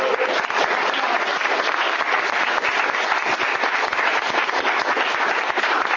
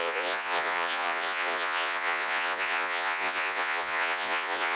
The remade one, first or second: second